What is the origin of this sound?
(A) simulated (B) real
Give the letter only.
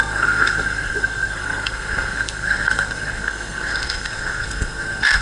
A